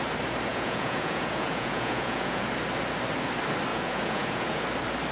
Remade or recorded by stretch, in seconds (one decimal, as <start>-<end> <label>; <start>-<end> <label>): 0.0-0.5 recorded; 0.5-2.5 remade; 2.5-3.7 recorded; 3.7-4.6 remade; 4.6-5.1 recorded